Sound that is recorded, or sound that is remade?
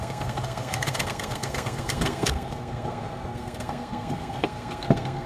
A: remade